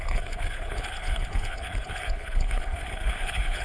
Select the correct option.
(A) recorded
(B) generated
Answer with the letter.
B